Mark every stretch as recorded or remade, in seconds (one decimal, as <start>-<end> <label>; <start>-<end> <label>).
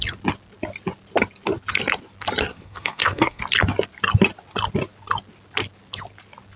0.0-2.5 recorded; 2.5-3.4 remade; 3.4-6.6 recorded